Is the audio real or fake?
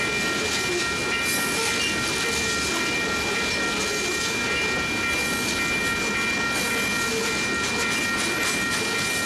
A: real